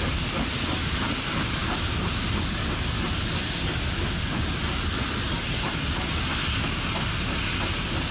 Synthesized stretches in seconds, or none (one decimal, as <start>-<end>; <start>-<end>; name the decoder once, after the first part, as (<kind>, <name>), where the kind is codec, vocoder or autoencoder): none